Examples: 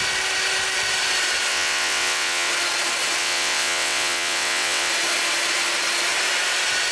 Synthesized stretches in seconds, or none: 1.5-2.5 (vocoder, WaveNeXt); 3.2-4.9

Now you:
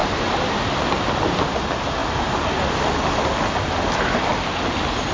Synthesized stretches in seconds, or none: none

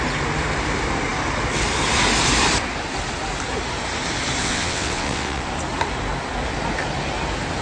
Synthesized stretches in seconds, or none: 4.4-5.5 (vocoder, WaveNeXt)

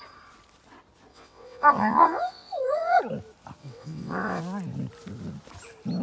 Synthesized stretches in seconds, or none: 1.1-3.0 (vocoder, WaveNeXt); 3.6-4.4

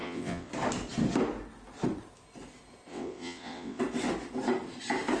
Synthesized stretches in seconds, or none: 0.0-0.5 (vocoder, WaveNeXt); 2.9-3.8